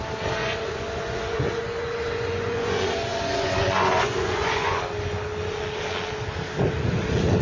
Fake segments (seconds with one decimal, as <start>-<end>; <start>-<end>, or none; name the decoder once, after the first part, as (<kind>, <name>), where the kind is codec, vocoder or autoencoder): 0.4-4.8 (vocoder, Vocos)

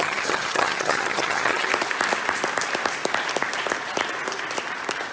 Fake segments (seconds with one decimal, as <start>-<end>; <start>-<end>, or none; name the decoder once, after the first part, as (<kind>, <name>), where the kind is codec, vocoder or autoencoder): 0.0-1.7 (vocoder, HiFi-GAN)

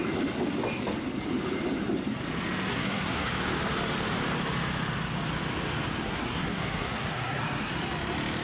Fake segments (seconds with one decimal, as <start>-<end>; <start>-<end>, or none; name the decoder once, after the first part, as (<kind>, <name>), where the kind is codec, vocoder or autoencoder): 2.7-3.3 (codec, SNAC); 6.0-7.7

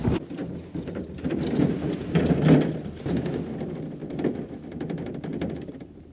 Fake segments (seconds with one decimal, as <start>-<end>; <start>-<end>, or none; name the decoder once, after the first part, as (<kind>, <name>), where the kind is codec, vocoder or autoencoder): 0.4-2.3 (vocoder, BigVGAN v2); 4.0-6.1

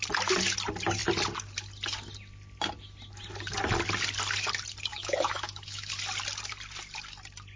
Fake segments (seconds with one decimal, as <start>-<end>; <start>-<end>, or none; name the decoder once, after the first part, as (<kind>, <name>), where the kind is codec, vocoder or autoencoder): 4.9-5.9 (autoencoder, DAC-VAE)

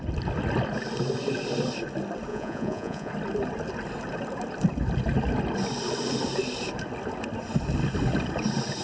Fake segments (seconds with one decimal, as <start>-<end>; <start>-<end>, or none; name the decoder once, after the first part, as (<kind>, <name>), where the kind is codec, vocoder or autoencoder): 2.3-3.1 (vocoder, Vocos)

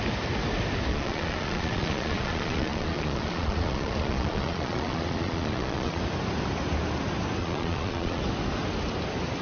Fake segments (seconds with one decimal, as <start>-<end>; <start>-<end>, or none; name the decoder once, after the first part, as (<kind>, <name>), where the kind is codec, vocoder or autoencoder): 0.9-6.0 (vocoder, Vocos); 7.4-8.2